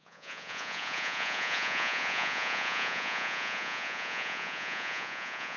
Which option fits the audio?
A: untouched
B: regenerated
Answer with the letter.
B